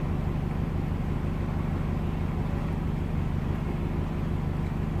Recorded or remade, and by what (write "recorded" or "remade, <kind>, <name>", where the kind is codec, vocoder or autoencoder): recorded